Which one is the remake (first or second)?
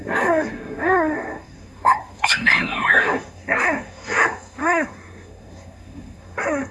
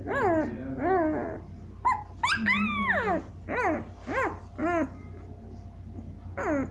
first